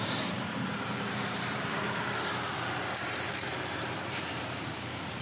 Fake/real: fake